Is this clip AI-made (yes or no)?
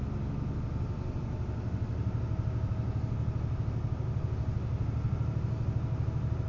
no